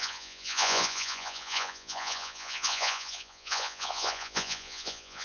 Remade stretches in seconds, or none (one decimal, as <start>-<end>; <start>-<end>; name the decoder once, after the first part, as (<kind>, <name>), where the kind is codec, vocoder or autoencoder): 0.0-5.2 (vocoder, Vocos)